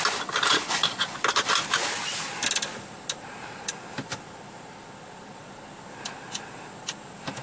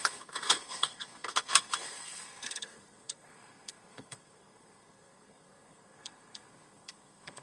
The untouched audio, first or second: first